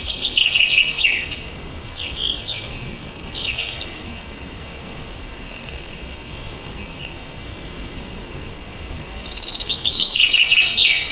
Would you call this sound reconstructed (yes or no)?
yes